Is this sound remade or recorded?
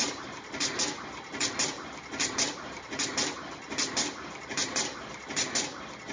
recorded